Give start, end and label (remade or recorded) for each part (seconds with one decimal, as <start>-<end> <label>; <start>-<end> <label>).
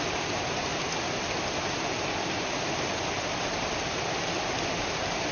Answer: 0.0-5.3 recorded